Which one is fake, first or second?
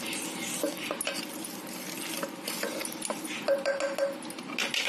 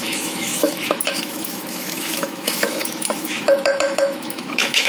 second